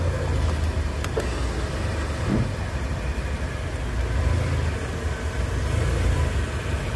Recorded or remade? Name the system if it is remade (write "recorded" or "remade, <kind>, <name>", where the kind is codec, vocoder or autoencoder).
recorded